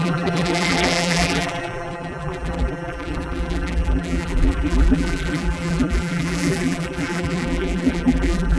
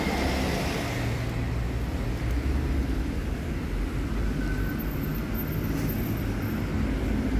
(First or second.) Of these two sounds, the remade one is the first